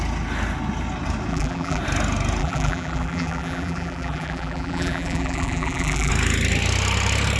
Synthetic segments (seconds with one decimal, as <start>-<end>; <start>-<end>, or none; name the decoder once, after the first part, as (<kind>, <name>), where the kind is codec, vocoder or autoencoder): 1.3-1.8 (vocoder, BigVGAN v2); 2.4-6.1